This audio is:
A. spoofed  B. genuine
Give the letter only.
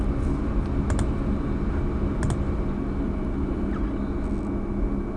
B